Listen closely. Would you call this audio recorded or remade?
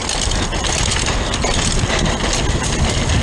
recorded